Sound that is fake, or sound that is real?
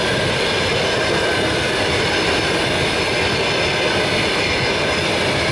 real